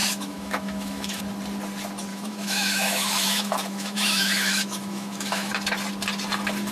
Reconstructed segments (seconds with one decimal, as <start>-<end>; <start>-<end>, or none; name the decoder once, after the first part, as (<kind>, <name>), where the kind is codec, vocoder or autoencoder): 0.0-1.2 (autoencoder, DAC-VAE); 2.1-5.5